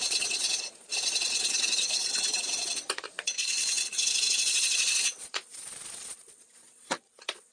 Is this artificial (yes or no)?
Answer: yes